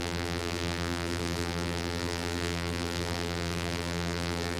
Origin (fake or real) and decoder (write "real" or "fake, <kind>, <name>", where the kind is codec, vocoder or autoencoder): fake, vocoder, BigVGAN v2